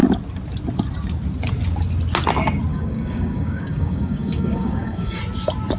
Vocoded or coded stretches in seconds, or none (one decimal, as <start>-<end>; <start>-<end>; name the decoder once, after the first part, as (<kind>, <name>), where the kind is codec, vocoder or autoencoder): 2.7-5.2 (codec, DAC)